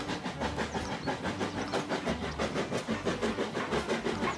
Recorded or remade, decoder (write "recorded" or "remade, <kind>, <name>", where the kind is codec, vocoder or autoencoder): recorded